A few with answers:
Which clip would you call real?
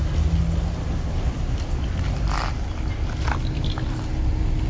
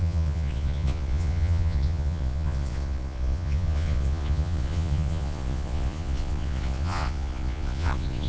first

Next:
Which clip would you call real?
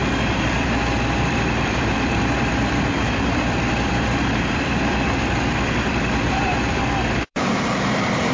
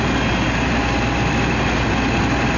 second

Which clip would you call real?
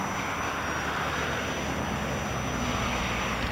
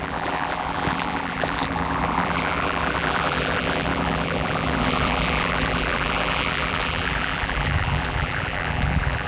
first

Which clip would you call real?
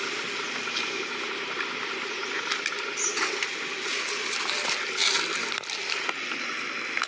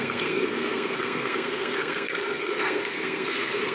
first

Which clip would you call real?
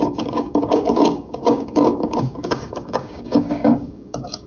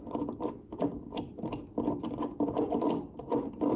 second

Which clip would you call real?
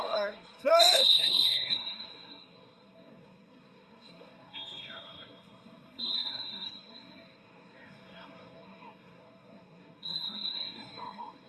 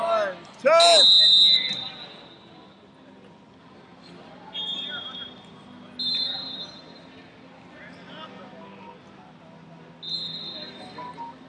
second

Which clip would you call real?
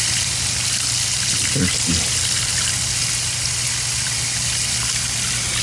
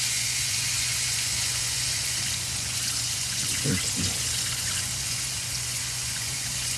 first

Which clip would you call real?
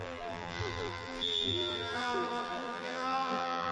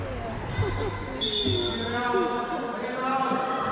second